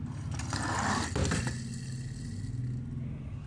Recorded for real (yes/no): yes